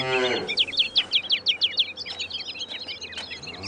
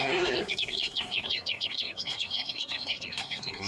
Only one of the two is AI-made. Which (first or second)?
second